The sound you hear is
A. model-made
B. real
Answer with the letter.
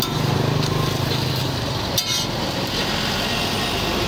B